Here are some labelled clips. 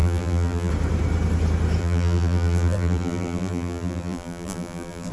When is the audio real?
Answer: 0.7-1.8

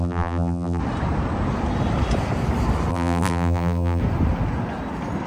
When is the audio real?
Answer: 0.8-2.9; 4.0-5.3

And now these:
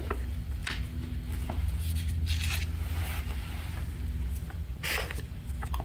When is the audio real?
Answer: 0.0-5.8